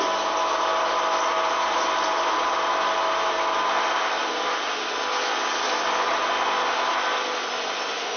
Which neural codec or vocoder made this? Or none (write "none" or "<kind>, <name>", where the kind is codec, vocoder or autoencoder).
none